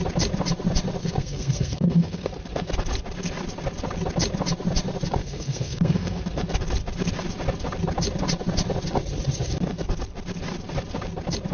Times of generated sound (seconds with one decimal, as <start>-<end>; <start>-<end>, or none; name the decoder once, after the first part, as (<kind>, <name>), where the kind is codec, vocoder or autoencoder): 1.0-2.3 (codec, SNAC); 5.2-6.2